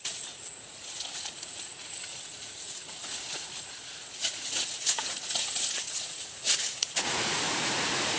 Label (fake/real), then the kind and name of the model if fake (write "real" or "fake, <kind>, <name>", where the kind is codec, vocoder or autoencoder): fake, vocoder, Vocos